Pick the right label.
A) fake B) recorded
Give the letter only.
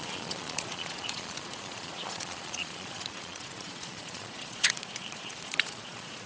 A